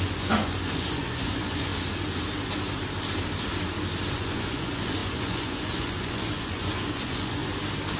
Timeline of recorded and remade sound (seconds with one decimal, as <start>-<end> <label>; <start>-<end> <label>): 0.0-1.7 remade; 1.7-4.1 recorded; 4.1-7.4 remade; 7.4-8.0 recorded